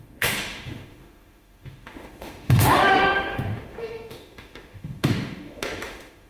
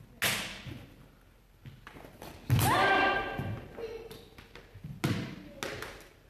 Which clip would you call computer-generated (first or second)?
first